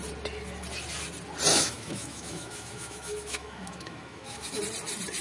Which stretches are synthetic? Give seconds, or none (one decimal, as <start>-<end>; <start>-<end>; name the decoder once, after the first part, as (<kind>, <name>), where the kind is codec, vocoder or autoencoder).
1.5-4.6 (autoencoder, DAC-VAE)